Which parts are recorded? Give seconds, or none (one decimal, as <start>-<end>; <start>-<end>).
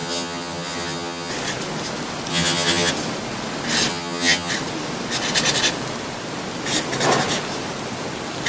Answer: 1.3-2.3; 2.9-3.9; 4.5-8.5